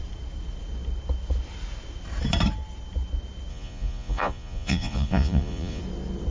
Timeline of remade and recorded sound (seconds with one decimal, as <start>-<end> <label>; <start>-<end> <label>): 0.0-3.5 recorded; 3.5-5.8 remade; 5.8-6.3 recorded